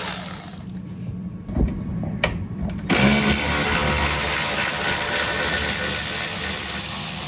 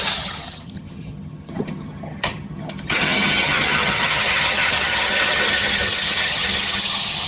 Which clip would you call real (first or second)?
first